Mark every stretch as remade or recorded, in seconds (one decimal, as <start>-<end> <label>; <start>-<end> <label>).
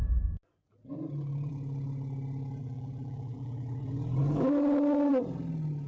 0.0-2.6 recorded; 2.6-3.8 remade; 3.8-5.9 recorded